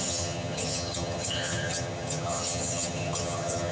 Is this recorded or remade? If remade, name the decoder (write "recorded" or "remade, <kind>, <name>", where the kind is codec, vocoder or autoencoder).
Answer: remade, vocoder, HiFi-GAN